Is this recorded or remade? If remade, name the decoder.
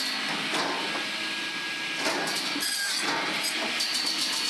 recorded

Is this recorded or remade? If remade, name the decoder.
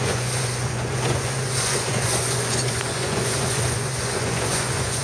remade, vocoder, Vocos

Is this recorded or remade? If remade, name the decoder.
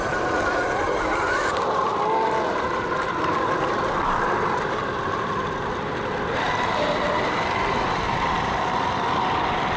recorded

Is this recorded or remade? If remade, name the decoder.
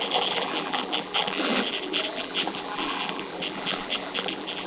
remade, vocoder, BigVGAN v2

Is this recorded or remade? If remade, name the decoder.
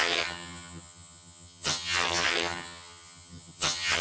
remade, vocoder, HiFi-GAN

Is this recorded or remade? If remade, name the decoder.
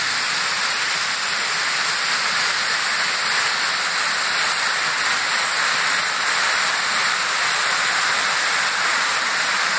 recorded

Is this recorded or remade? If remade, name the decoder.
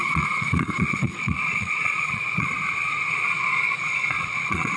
remade, vocoder, Vocos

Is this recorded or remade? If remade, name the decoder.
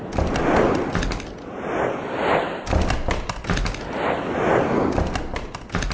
recorded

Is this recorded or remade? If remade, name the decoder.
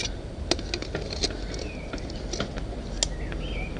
recorded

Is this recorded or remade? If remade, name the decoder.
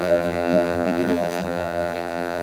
remade, vocoder, BigVGAN v2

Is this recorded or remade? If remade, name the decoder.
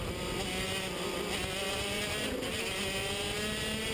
recorded